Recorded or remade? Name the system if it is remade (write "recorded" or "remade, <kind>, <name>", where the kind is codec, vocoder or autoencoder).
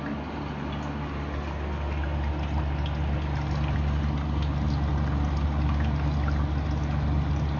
recorded